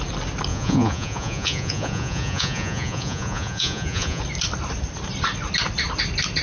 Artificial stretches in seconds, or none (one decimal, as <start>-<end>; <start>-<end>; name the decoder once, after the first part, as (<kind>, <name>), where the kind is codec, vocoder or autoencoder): 0.5-4.2 (vocoder, Vocos)